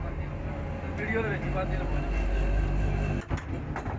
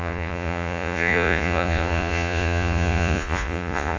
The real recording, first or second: first